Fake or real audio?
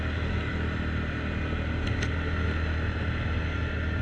real